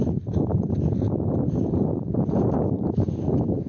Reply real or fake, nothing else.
fake